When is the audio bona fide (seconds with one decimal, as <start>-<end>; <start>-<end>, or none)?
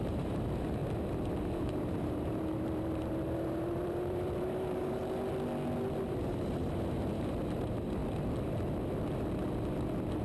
0.8-1.4; 5.0-6.1; 8.0-10.2